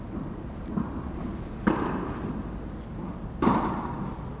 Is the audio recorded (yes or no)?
yes